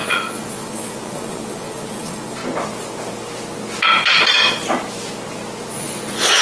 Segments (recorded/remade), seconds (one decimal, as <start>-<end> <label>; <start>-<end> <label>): 0.0-2.4 remade; 2.4-5.7 recorded; 5.7-6.4 remade